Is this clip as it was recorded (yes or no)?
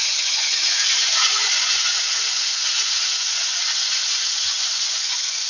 no